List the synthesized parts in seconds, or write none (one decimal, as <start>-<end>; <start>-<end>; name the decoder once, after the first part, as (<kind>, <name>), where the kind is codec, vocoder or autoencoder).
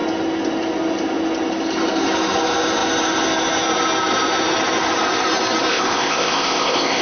5.7-7.0 (codec, ZipCodec)